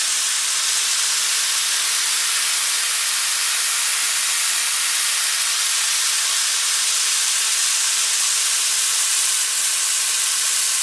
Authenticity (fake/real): real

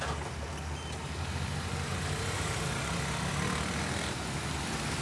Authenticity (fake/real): real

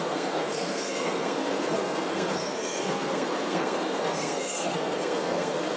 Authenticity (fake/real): fake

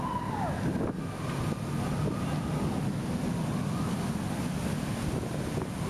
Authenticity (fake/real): real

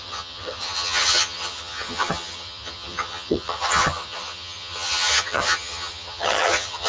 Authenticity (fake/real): fake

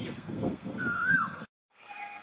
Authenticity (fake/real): fake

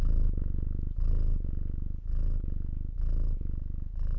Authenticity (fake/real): real